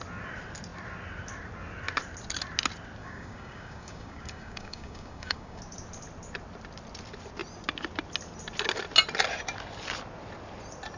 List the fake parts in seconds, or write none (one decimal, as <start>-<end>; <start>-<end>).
3.0-5.6